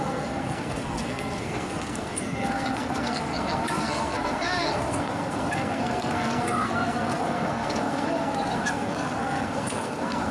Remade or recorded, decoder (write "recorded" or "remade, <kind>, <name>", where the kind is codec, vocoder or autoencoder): remade, codec, SNAC